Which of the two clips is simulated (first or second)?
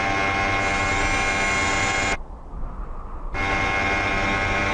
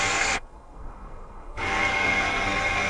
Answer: second